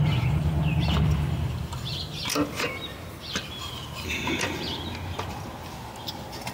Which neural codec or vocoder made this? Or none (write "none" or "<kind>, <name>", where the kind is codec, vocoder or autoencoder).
none